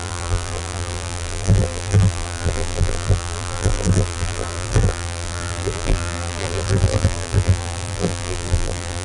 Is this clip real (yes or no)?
no